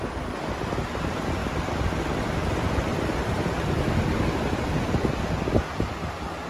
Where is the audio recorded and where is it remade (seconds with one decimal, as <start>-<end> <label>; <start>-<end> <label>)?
0.0-1.4 recorded; 1.4-3.7 remade; 3.7-6.5 recorded